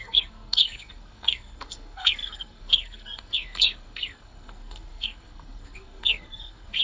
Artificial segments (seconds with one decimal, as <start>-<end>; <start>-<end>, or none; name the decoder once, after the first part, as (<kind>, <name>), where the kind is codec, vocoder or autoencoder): 0.0-6.8 (codec, SNAC)